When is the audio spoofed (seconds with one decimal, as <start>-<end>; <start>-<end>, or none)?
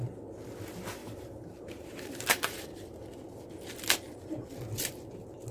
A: 1.0-3.0